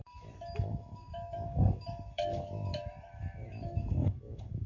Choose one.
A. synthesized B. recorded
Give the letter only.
A